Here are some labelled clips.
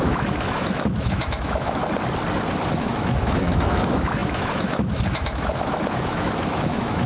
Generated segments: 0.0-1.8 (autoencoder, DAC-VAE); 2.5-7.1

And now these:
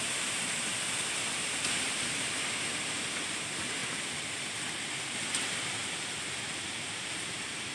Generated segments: 0.0-3.8 (vocoder, BigVGAN v2); 5.1-7.7

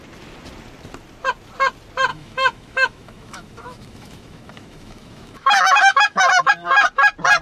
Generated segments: 2.1-6.5 (autoencoder, DAC-VAE)